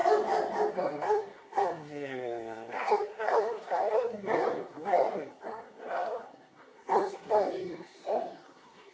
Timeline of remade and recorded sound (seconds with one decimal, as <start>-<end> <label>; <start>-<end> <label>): 0.0-0.7 recorded; 0.7-8.9 remade